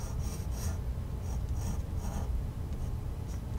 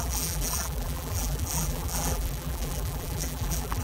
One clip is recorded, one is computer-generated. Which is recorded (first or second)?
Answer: first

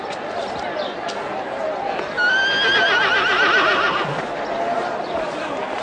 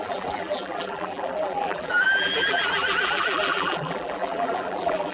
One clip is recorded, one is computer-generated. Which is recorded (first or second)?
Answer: first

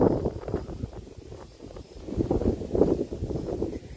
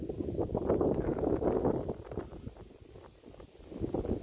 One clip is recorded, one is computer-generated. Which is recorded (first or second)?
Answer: second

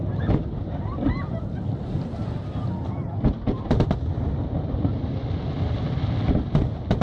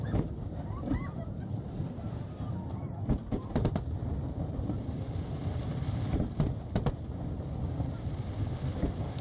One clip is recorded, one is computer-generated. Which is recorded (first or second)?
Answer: first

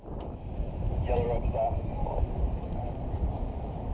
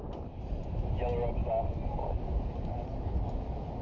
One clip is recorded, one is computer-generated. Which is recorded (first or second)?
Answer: second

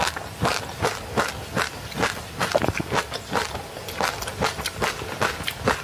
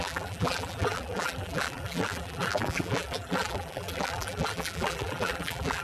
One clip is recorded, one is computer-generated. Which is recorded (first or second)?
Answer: first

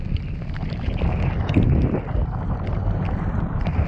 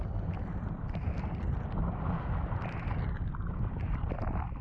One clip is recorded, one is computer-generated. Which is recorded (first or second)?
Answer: second